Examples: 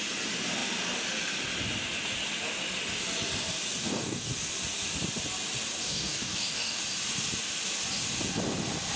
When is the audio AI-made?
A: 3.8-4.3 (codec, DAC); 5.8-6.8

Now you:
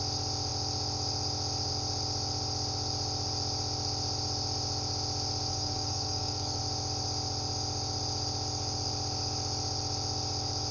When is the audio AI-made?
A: 5.5-6.6 (codec, DAC)